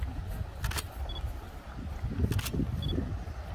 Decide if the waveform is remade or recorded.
recorded